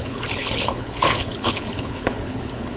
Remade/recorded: remade